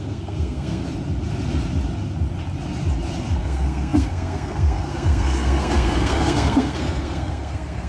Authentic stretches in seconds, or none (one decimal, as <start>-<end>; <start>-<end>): 0.8-3.4